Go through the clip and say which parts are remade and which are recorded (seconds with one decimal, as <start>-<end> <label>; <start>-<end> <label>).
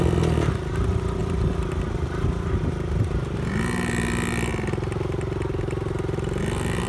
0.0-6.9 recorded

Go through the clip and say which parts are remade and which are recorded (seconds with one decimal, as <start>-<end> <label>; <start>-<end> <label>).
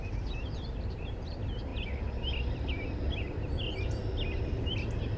0.0-1.7 remade; 1.7-3.2 recorded; 3.2-4.0 remade; 4.0-5.2 recorded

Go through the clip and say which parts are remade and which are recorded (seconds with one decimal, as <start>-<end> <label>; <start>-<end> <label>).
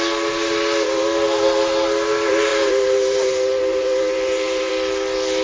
0.0-2.5 recorded; 2.5-4.7 remade; 4.7-5.4 recorded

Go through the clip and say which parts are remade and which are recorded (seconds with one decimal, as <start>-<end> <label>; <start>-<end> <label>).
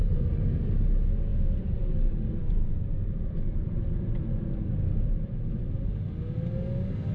0.0-0.7 remade; 0.7-1.3 recorded; 1.3-5.6 remade; 5.6-7.1 recorded